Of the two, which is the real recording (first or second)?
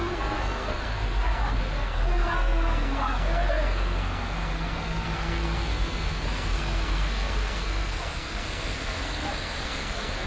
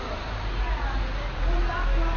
second